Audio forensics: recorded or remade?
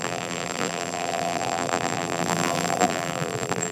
remade